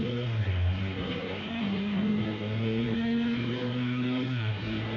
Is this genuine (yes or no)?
no